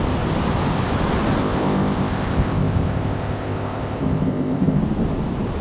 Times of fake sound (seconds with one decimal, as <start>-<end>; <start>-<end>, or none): 1.4-4.8